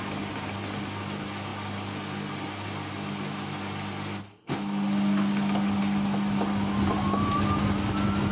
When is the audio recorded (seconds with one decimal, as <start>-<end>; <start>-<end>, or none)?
0.0-8.3